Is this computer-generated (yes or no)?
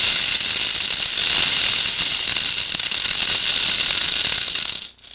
no